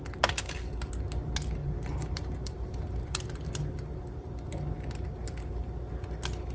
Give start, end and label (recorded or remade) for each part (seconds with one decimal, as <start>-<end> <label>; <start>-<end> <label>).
0.0-1.6 recorded; 1.6-3.5 remade; 3.5-6.5 recorded